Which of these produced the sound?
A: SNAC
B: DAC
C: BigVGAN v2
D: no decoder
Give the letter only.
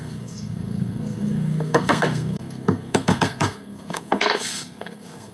A